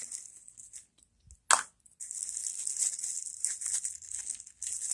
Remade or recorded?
recorded